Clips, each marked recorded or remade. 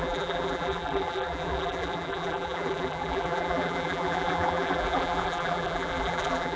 remade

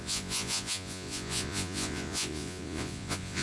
remade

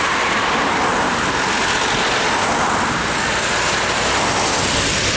recorded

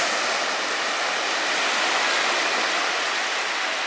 recorded